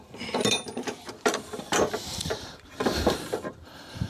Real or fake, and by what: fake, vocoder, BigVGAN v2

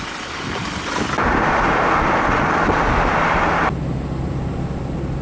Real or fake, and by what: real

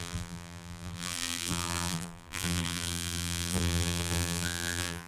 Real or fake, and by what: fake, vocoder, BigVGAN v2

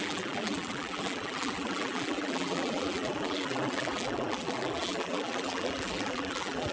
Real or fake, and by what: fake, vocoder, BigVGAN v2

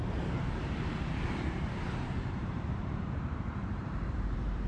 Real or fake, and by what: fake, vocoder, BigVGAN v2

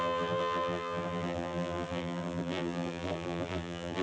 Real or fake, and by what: fake, vocoder, BigVGAN v2